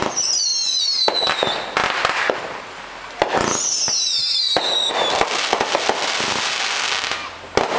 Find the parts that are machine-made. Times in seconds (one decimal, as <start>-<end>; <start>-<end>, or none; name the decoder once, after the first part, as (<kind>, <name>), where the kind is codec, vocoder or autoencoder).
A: none